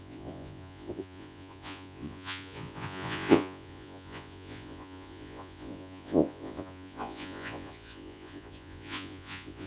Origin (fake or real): fake